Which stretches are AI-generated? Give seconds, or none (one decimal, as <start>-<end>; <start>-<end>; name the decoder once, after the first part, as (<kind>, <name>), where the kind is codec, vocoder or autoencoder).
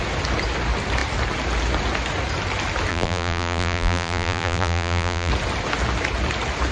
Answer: 2.9-5.3 (vocoder, BigVGAN v2)